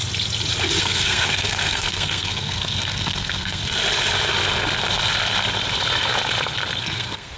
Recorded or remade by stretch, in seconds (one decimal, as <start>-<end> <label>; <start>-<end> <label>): 0.0-0.8 recorded; 0.8-3.6 remade; 3.6-6.8 recorded; 6.8-7.4 remade

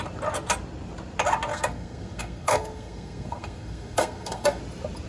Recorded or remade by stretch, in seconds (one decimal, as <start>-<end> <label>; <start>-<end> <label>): 0.0-1.5 recorded; 1.5-4.6 remade; 4.6-5.1 recorded

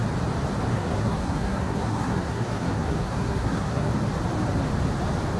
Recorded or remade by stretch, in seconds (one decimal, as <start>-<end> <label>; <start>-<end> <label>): 0.0-0.7 recorded; 0.7-3.9 remade; 3.9-5.4 recorded

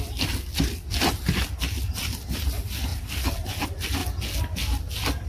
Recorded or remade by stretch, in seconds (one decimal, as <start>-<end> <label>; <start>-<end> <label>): 0.0-5.3 recorded

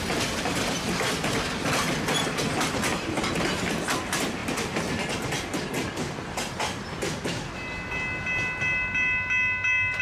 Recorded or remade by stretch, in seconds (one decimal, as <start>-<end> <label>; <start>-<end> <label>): 0.0-10.0 recorded

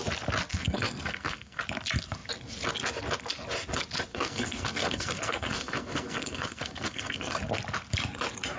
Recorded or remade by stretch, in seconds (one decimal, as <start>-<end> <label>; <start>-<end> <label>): 0.0-0.5 recorded; 0.5-1.6 remade; 1.6-4.1 recorded; 4.1-7.4 remade; 7.4-8.6 recorded